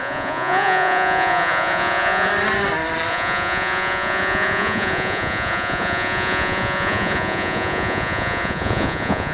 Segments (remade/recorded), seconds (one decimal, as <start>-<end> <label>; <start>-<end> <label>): 0.0-2.3 remade; 2.3-3.1 recorded; 3.1-9.3 remade

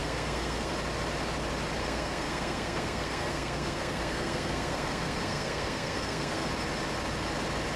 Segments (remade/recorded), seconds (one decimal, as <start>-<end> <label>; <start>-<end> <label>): 0.0-0.7 remade; 0.7-1.8 recorded; 1.8-6.5 remade; 6.5-7.8 recorded

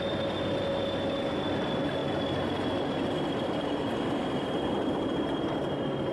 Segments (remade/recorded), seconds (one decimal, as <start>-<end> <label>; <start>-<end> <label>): 0.0-6.1 recorded